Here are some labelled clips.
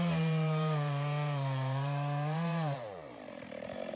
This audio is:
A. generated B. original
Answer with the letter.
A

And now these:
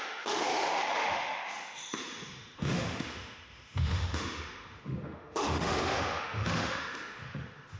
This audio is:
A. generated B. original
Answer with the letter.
A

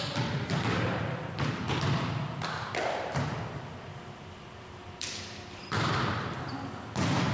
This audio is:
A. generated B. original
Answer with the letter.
A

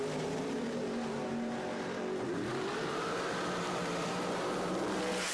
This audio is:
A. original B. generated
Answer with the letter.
B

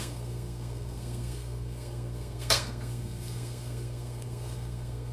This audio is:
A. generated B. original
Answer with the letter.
A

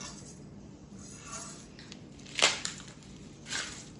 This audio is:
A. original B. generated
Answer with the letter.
B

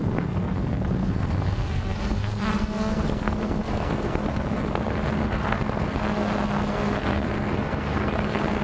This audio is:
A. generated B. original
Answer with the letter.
A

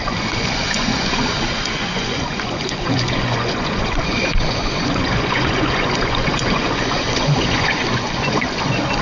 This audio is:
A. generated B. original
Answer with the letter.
A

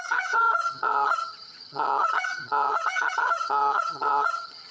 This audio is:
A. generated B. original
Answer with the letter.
A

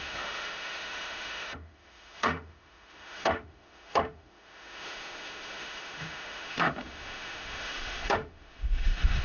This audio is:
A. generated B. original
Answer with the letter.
A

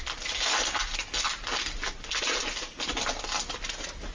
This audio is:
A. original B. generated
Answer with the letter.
A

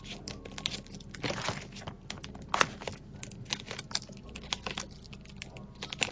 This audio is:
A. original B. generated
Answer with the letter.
A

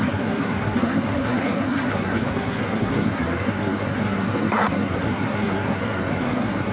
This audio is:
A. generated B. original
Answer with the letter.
A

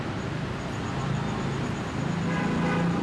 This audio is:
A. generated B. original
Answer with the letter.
B